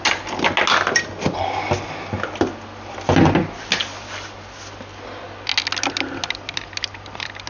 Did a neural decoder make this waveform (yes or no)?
no